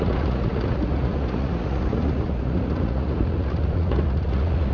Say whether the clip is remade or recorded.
remade